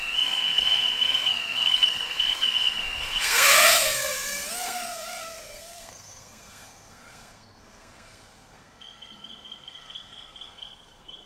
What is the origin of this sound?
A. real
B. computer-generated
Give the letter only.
B